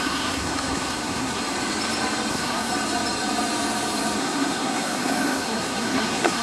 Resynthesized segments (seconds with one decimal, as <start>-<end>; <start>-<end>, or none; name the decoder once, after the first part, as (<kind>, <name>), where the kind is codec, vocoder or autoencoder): 0.0-1.4 (codec, SNAC); 2.3-2.7; 4.2-6.4